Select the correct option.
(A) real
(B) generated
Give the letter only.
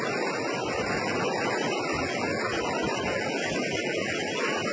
A